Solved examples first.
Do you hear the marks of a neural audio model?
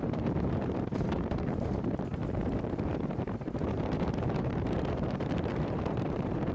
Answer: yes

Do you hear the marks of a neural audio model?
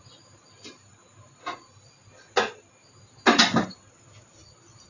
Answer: no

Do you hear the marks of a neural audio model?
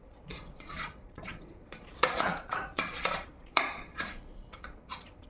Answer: yes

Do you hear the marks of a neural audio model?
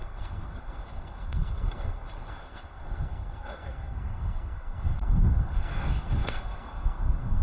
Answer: yes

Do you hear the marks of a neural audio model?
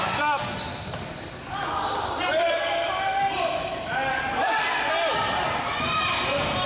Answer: no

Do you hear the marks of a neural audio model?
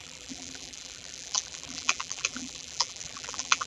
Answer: yes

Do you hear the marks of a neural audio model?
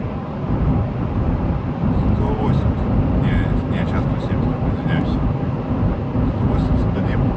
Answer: yes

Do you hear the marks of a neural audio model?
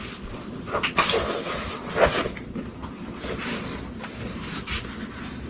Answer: no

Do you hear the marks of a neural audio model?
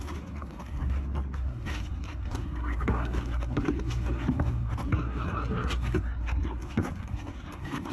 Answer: yes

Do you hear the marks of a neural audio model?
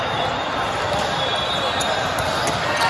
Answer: no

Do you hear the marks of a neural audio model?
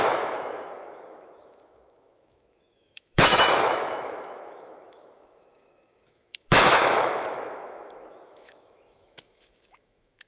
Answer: yes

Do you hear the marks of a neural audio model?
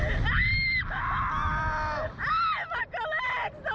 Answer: no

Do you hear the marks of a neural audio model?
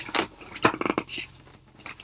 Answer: no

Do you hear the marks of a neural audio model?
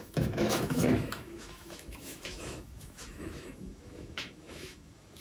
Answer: yes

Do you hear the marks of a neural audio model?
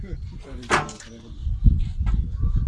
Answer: no